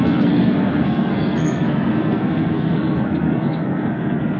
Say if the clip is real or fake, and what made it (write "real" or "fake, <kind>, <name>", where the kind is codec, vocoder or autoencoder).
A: fake, codec, SNAC